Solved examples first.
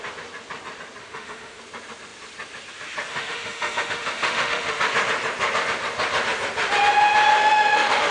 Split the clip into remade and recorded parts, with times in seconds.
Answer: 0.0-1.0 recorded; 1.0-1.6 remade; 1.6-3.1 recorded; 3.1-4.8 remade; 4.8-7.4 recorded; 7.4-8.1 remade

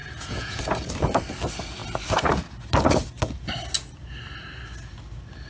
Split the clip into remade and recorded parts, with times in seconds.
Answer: 0.0-0.6 remade; 0.6-5.5 recorded

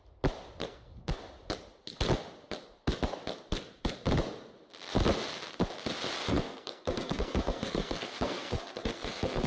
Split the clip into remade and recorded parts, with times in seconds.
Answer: 0.0-0.6 recorded; 0.6-1.2 remade; 1.2-6.3 recorded; 6.3-9.5 remade

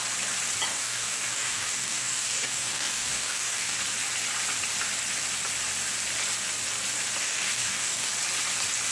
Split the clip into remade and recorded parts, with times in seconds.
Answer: 0.0-0.7 recorded; 0.7-3.8 remade; 3.8-7.2 recorded; 7.2-8.1 remade; 8.1-8.9 recorded

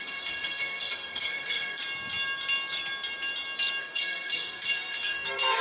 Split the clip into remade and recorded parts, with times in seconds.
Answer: 0.0-1.8 remade; 1.8-3.8 recorded; 3.8-5.6 remade

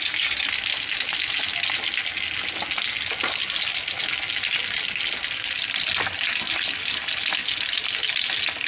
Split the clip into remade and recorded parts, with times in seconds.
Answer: 0.0-8.7 recorded

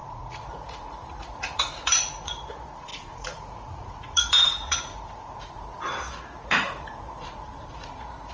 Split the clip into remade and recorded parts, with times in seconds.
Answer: 0.0-8.3 remade

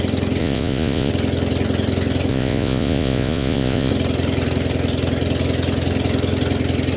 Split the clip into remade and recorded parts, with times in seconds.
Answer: 0.0-0.4 recorded; 0.4-1.1 remade; 1.1-2.3 recorded; 2.3-3.9 remade; 3.9-7.0 recorded